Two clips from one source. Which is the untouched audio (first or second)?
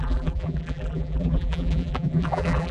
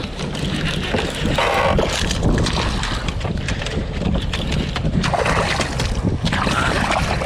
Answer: second